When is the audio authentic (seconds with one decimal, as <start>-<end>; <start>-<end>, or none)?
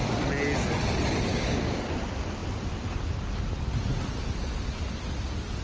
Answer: 0.0-1.3; 1.8-5.6